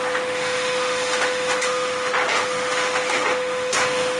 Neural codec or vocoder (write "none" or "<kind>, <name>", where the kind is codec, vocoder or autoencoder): autoencoder, DAC-VAE